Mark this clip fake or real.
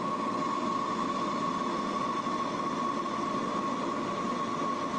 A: real